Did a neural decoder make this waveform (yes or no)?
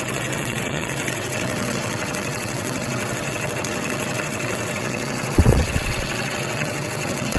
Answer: yes